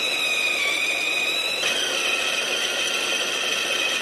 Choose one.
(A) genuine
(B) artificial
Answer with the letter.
A